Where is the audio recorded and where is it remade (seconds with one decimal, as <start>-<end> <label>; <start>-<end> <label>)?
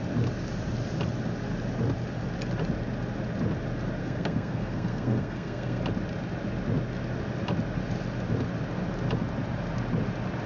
0.0-4.0 recorded; 4.0-5.8 remade; 5.8-10.5 recorded